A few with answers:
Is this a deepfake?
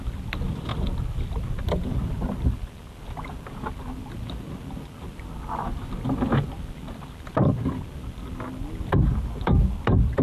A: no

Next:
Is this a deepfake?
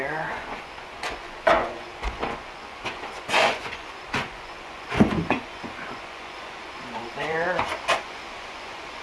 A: yes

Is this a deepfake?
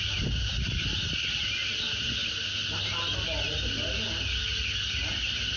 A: no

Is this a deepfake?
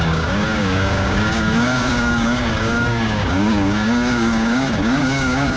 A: yes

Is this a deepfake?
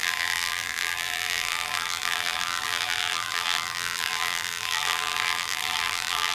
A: yes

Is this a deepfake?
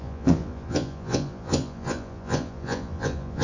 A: yes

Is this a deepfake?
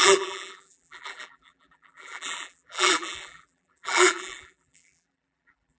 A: yes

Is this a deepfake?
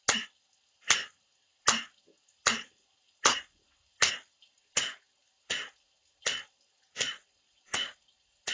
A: no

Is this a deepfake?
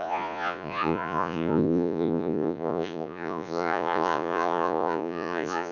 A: yes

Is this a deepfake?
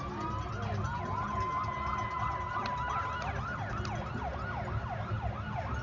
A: no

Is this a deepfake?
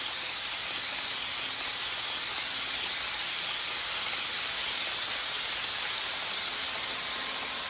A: no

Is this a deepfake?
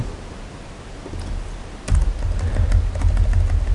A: no